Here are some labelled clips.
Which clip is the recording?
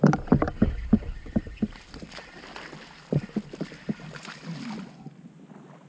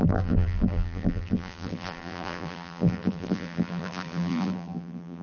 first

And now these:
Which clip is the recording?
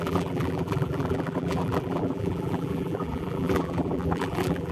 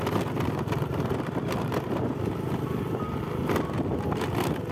second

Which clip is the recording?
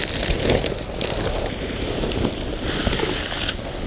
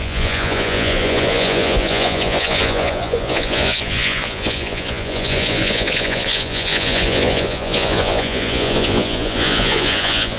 first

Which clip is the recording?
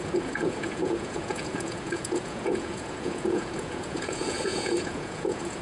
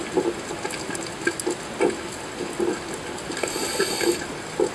second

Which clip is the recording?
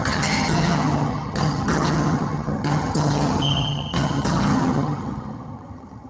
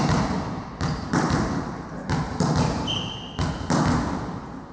second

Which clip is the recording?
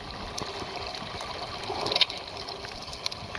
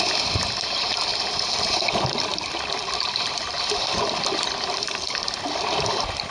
first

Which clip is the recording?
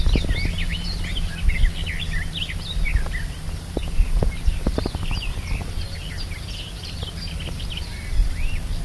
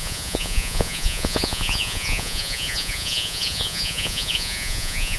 first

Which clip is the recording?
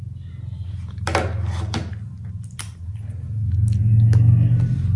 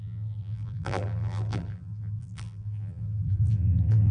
first